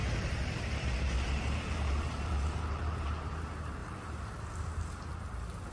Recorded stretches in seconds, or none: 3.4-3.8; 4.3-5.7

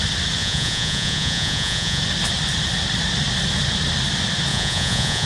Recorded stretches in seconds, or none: 0.0-0.4; 2.0-4.5

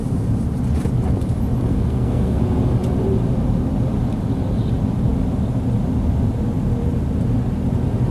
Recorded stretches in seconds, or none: 0.0-1.7; 2.4-8.1

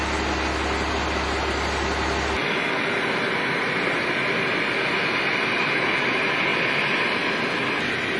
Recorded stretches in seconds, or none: 0.0-8.2

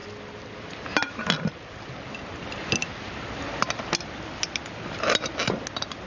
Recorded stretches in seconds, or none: 0.0-6.1